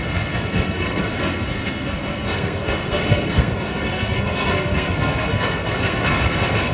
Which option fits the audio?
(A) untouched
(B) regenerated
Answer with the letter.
B